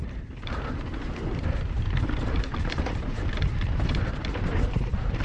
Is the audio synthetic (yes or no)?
yes